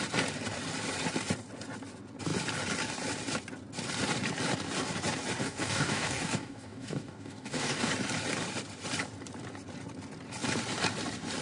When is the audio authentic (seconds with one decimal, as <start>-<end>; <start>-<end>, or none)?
0.0-5.4; 7.9-11.4